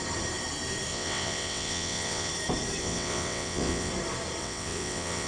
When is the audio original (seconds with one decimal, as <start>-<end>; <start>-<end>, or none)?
0.0-0.9; 2.3-2.8; 3.9-4.4